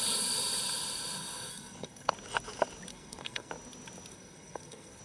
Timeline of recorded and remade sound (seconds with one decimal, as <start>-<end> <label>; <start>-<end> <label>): 0.0-1.5 recorded; 1.5-2.1 remade; 2.1-2.9 recorded; 2.9-3.5 remade; 3.5-4.1 recorded; 4.1-5.0 remade